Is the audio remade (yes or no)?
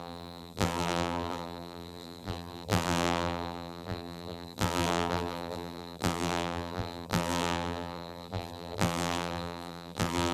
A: yes